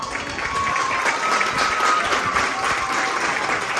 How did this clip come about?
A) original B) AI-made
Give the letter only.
A